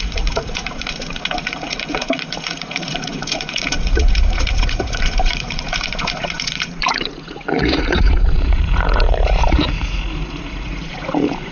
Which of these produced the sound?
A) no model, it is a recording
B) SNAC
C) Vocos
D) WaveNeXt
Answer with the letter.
C